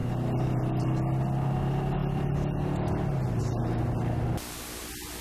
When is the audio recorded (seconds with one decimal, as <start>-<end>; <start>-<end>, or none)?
0.0-5.2